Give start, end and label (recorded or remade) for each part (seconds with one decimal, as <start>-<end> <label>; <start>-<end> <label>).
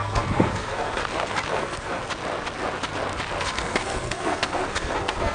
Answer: 0.0-1.0 remade; 1.0-1.5 recorded; 1.5-2.0 remade; 2.0-3.4 recorded; 3.4-5.3 remade